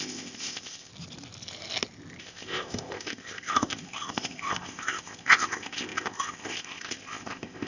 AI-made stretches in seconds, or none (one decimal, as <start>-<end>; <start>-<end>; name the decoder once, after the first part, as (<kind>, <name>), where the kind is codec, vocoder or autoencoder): 0.0-0.9 (codec, ZipCodec); 2.2-7.7